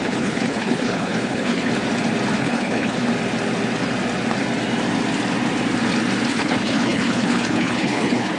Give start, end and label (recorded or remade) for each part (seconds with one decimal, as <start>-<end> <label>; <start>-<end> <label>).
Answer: 0.0-1.7 remade; 1.7-2.4 recorded; 2.4-3.0 remade; 3.0-6.3 recorded; 6.3-8.4 remade